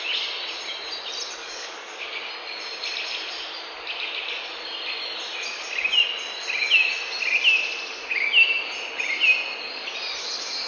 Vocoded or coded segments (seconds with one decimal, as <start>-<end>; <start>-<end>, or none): 1.4-2.3